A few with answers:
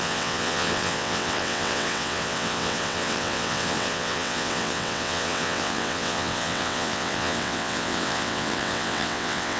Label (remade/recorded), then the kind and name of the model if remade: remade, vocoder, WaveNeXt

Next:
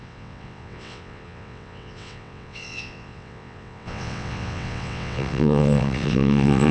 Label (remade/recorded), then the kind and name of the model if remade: remade, vocoder, WaveNeXt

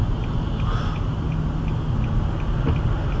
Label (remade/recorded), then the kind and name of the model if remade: recorded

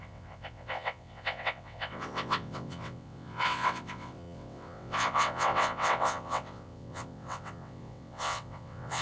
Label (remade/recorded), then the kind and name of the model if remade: remade, vocoder, WaveNeXt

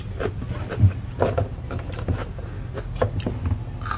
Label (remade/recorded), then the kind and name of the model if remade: recorded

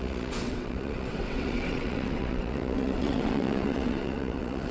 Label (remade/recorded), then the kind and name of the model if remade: remade, vocoder, WaveNeXt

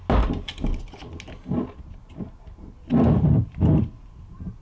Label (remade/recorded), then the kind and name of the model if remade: recorded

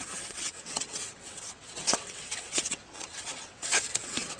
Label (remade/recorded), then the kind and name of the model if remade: remade, vocoder, WaveNeXt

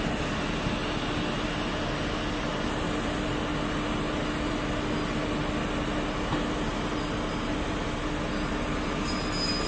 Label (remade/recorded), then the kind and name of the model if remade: recorded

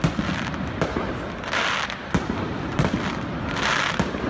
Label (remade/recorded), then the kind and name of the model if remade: recorded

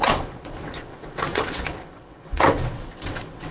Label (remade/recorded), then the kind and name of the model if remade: remade, vocoder, WaveNeXt